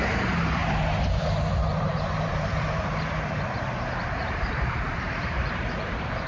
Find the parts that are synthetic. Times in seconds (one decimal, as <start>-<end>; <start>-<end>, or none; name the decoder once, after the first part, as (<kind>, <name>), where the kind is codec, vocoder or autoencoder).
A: 0.0-0.6 (vocoder, BigVGAN v2); 1.8-6.3

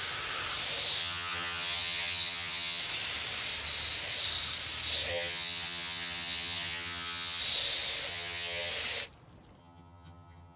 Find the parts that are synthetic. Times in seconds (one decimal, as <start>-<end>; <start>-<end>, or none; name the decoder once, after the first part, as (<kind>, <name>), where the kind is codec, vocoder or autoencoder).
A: 1.0-2.8 (vocoder, HiFi-GAN); 5.1-7.4; 8.1-8.7; 9.6-10.6